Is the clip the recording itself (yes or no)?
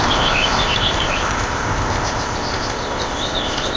no